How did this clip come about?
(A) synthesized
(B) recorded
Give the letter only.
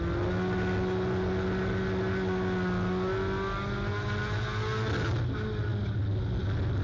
B